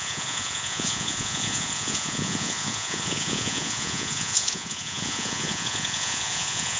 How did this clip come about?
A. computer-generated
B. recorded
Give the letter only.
A